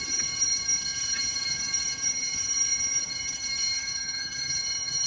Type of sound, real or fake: fake